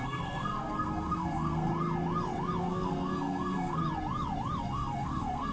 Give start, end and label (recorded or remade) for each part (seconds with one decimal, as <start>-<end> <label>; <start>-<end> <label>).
0.0-1.7 remade; 1.7-2.6 recorded; 2.6-3.8 remade; 3.8-4.6 recorded; 4.6-5.5 remade